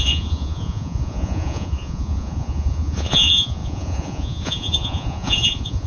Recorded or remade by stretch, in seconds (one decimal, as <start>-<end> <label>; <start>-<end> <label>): 0.0-5.9 remade